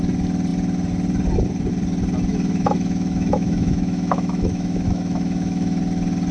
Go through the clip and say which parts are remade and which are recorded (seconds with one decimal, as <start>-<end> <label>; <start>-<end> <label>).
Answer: 0.0-2.3 recorded; 2.3-5.8 remade; 5.8-6.3 recorded